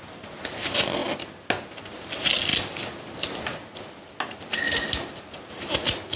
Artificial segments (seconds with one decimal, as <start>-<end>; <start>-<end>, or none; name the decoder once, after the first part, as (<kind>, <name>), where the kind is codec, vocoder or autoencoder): none